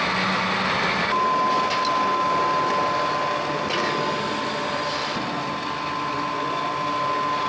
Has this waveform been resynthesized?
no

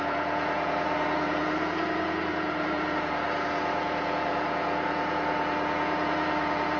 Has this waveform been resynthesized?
yes